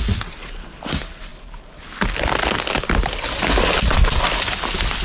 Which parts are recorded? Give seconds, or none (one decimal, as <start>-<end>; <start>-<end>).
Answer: 0.0-5.0